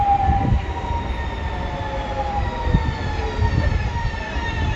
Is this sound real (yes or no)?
yes